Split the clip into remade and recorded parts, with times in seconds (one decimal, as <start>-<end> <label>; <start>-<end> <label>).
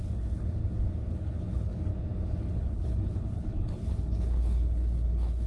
0.0-0.6 remade; 0.6-1.1 recorded; 1.1-1.9 remade; 1.9-2.4 recorded; 2.4-5.5 remade